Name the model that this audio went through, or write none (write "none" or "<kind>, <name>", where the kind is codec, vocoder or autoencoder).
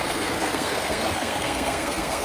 codec, SNAC